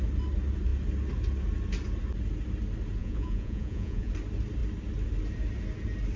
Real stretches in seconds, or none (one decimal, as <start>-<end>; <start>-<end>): 0.0-3.0; 4.1-6.2